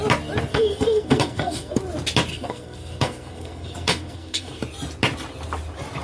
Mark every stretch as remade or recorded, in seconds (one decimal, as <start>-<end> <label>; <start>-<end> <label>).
0.0-0.5 recorded; 0.5-1.8 remade; 1.8-2.3 recorded; 2.3-4.6 remade; 4.6-6.0 recorded